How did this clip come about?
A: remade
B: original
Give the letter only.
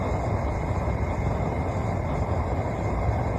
B